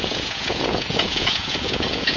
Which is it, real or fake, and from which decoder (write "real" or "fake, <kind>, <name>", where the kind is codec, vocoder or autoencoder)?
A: fake, vocoder, Vocos